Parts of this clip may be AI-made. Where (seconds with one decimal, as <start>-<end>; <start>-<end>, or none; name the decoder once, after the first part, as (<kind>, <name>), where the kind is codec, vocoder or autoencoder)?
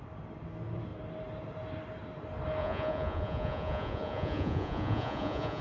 2.6-5.6 (vocoder, Vocos)